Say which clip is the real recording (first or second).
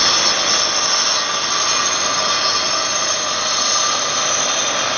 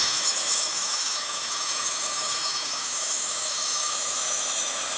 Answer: first